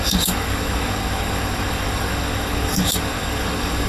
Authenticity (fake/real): fake